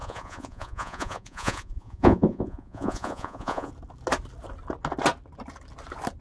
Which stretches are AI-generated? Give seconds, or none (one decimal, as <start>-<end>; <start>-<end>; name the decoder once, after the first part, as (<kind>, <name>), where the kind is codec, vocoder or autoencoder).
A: 0.0-3.7 (vocoder, Vocos)